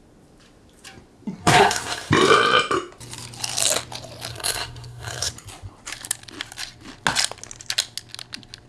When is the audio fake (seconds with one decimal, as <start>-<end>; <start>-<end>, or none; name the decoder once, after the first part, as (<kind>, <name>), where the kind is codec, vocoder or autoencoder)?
1.4-2.1 (codec, SNAC); 4.3-5.3